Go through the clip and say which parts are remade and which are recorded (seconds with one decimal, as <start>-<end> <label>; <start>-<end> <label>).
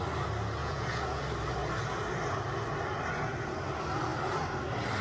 0.0-0.6 recorded; 0.6-1.2 remade; 1.2-5.0 recorded